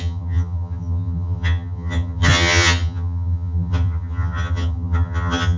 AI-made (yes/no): yes